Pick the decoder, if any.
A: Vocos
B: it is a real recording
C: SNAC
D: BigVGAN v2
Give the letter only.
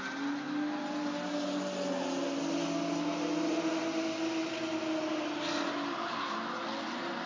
B